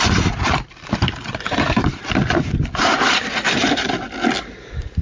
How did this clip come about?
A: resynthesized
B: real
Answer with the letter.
B